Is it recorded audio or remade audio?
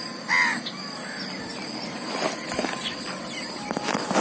recorded